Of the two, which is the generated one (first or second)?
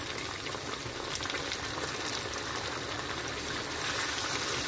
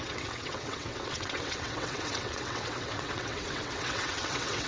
second